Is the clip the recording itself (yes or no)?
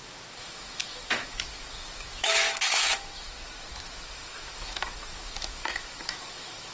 no